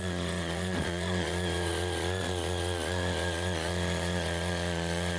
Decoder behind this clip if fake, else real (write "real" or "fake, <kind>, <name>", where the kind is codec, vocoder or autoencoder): fake, vocoder, Vocos